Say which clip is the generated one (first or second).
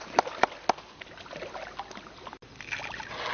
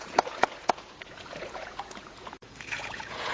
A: second